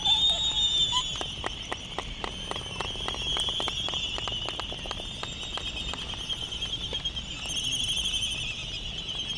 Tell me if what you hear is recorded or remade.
recorded